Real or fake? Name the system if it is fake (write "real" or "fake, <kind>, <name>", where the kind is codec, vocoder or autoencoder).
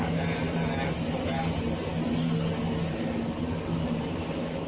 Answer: real